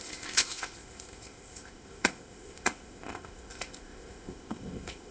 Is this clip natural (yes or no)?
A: no